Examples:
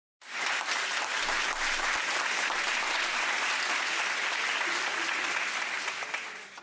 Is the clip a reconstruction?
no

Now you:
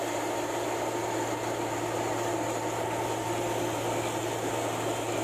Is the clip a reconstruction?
no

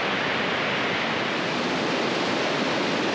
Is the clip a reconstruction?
no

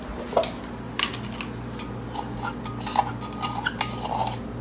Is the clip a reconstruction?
no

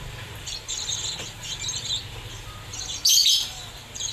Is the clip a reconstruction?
yes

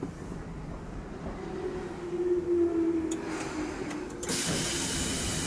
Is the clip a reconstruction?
no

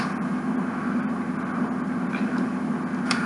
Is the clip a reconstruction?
no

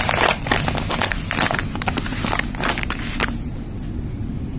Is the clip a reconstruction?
no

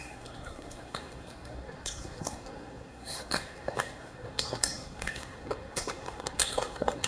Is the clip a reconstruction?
yes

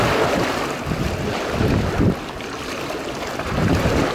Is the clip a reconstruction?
no